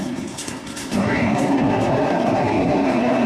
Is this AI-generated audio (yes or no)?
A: yes